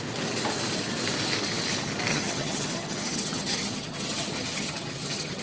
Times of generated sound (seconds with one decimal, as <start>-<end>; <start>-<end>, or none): 2.1-5.4